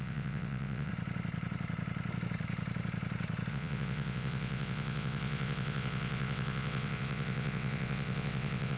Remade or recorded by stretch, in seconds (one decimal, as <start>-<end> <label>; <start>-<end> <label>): 0.0-0.9 remade; 0.9-3.5 recorded; 3.5-8.8 remade